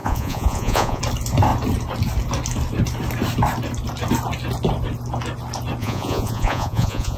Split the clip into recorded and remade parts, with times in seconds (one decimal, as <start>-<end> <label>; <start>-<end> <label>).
0.0-1.0 remade; 1.0-5.8 recorded; 5.8-7.2 remade